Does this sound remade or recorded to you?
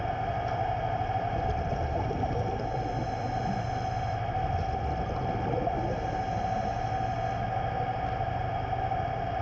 recorded